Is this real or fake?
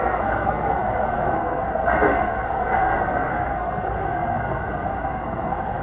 fake